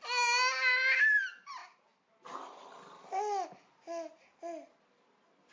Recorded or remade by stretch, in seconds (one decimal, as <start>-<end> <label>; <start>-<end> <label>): 0.0-5.5 recorded